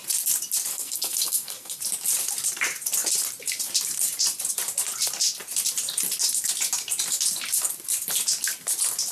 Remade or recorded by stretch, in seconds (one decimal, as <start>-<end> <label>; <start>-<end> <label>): 0.0-0.7 recorded; 0.7-1.8 remade; 1.8-9.1 recorded